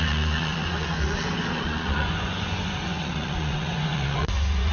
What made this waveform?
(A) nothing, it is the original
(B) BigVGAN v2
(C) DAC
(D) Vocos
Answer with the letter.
D